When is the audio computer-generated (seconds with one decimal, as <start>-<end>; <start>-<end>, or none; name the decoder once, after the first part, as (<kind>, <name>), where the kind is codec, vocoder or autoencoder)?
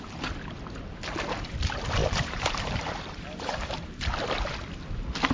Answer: 2.0-4.0 (vocoder, BigVGAN v2)